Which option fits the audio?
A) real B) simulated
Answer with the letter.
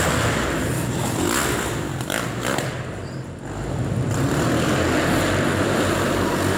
A